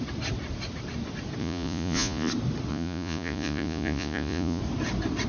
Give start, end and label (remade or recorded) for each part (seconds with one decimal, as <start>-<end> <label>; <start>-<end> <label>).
0.0-1.4 recorded; 1.4-2.3 remade; 2.3-2.7 recorded; 2.7-4.6 remade; 4.6-5.3 recorded